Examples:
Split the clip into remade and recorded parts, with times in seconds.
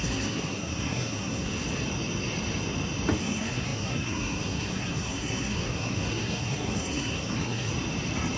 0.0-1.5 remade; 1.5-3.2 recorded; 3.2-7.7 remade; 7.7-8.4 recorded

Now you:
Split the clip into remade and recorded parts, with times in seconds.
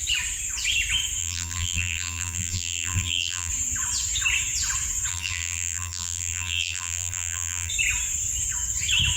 0.0-1.2 recorded; 1.2-3.5 remade; 3.5-5.1 recorded; 5.1-7.7 remade; 7.7-9.2 recorded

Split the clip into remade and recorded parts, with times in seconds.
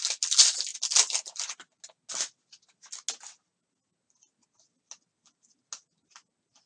0.0-6.7 recorded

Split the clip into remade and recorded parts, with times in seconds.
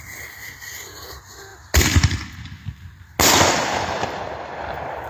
0.0-5.1 recorded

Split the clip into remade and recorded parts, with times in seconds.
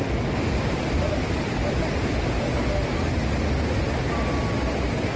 0.0-5.2 recorded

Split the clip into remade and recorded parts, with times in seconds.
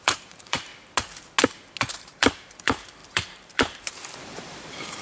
0.0-0.7 remade; 0.7-1.8 recorded; 1.8-5.0 remade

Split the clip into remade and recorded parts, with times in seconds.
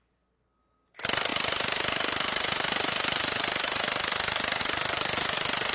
0.0-5.7 recorded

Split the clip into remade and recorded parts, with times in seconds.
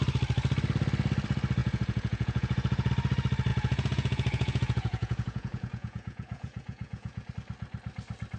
0.0-1.6 recorded; 1.6-2.9 remade; 2.9-3.5 recorded; 3.5-7.3 remade; 7.3-8.4 recorded